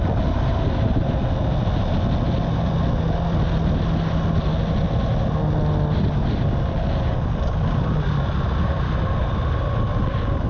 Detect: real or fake real